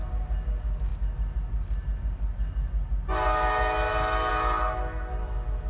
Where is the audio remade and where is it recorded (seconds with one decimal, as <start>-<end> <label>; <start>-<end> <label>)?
0.0-5.7 recorded